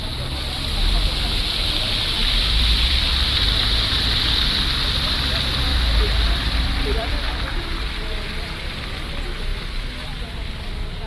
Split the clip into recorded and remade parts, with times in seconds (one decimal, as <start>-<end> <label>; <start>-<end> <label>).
0.0-2.2 recorded; 2.2-3.4 remade; 3.4-5.7 recorded; 5.7-7.3 remade; 7.3-9.5 recorded; 9.5-10.5 remade; 10.5-11.1 recorded